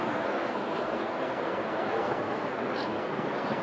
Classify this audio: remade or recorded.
remade